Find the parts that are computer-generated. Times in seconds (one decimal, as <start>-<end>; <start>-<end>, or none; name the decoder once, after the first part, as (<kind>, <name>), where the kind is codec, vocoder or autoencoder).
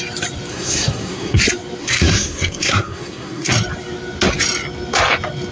0.5-1.4 (codec, SNAC); 1.8-3.5